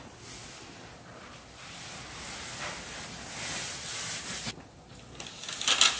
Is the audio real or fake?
real